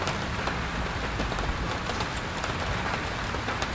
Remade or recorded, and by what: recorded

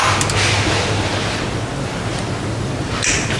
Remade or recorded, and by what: recorded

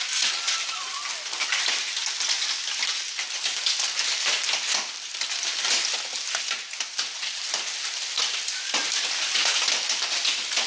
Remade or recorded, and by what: recorded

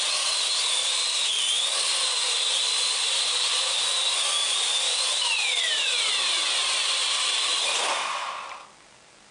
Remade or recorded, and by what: recorded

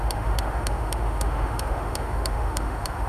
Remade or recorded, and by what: remade, autoencoder, DAC-VAE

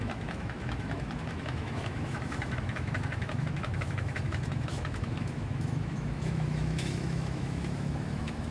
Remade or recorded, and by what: remade, autoencoder, DAC-VAE